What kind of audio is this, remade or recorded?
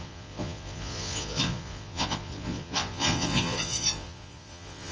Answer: remade